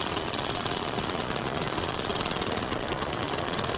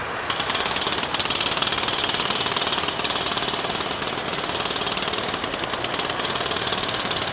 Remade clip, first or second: first